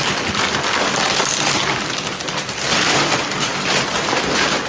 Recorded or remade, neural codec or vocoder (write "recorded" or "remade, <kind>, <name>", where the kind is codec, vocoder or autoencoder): recorded